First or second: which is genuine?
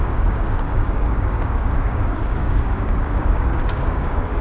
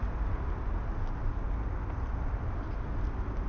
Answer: second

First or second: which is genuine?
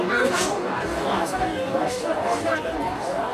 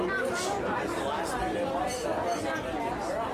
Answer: second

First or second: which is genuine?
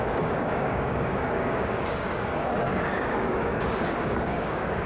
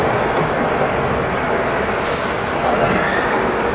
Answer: second